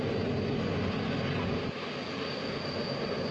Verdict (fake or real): real